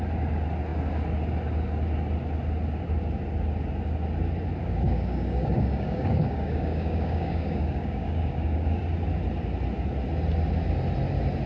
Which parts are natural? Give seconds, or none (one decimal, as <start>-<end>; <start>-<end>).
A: 0.0-4.6; 8.8-11.5